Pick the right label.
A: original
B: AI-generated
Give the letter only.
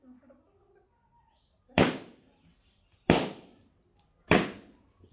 A